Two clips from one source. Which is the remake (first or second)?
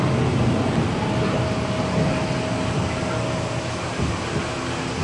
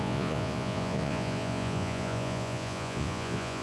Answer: second